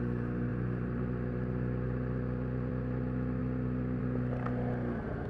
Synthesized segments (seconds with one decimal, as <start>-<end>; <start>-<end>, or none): none